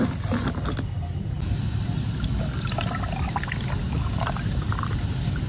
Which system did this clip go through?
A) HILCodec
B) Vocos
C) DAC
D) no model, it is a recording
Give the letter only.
D